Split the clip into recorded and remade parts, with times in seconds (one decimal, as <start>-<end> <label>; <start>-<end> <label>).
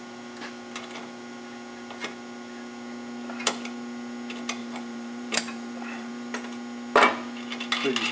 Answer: 0.0-4.6 recorded; 4.6-6.1 remade; 6.1-8.1 recorded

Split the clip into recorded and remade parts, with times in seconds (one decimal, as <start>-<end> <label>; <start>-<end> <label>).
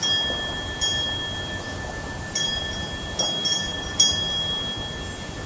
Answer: 0.0-5.5 recorded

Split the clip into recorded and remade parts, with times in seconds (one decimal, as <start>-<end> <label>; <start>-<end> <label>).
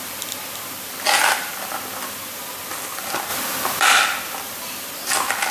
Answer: 0.0-5.5 recorded